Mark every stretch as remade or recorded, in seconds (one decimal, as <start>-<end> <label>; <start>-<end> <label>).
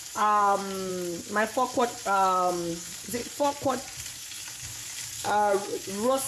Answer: 0.0-0.9 remade; 0.9-2.5 recorded; 2.5-3.2 remade; 3.2-4.1 recorded; 4.1-6.3 remade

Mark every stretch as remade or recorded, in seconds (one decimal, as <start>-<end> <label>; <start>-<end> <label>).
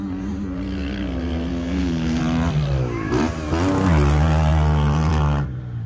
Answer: 0.0-1.5 recorded; 1.5-2.2 remade; 2.2-5.9 recorded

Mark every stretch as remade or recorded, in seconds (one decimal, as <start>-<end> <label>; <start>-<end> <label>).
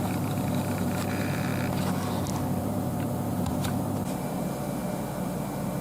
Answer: 0.0-1.5 remade; 1.5-2.6 recorded; 2.6-4.8 remade; 4.8-5.8 recorded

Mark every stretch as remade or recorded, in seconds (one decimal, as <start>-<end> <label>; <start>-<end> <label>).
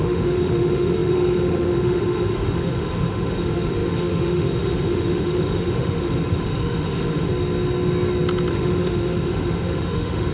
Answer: 0.0-7.3 remade; 7.3-8.5 recorded; 8.5-10.3 remade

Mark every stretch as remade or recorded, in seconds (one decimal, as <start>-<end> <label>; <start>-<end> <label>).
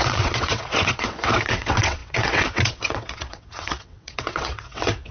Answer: 0.0-5.1 remade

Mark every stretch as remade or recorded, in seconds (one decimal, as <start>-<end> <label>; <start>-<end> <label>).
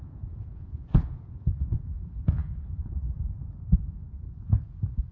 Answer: 0.0-5.1 remade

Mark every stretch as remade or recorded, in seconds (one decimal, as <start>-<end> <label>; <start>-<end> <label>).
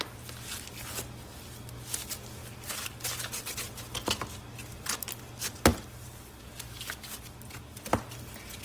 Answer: 0.0-8.6 recorded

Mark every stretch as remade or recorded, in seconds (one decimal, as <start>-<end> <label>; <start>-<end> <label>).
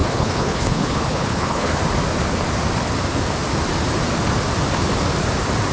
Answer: 0.0-1.8 remade; 1.8-5.7 recorded